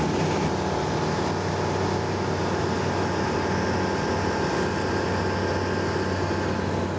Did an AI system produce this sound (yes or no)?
no